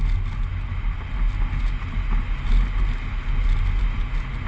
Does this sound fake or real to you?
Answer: real